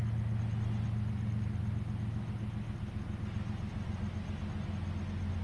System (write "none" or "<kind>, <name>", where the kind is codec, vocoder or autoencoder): none